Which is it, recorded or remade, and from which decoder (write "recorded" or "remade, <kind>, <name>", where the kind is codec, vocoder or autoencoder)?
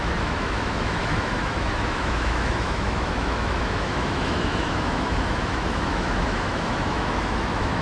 remade, autoencoder, DAC-VAE